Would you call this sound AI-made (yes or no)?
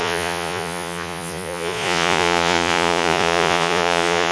yes